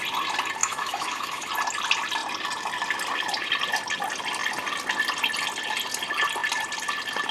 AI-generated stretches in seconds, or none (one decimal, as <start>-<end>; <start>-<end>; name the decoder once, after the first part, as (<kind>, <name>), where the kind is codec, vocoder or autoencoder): 0.6-1.5 (autoencoder, DAC-VAE)